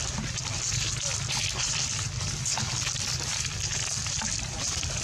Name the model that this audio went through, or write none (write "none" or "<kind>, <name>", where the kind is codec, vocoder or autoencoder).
none